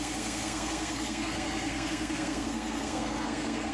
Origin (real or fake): fake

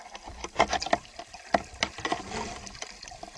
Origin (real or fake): real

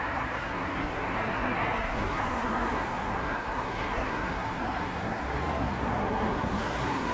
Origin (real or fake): fake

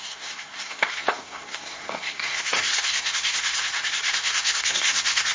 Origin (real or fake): fake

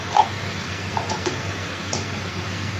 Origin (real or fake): fake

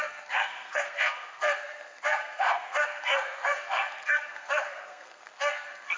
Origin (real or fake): fake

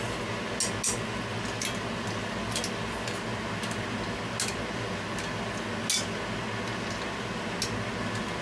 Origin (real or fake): real